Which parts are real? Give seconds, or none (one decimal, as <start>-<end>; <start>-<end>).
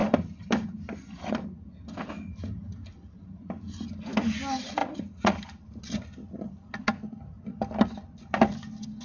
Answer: 0.0-4.8; 5.3-9.0